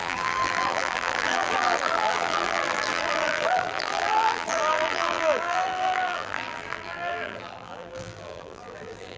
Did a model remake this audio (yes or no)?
yes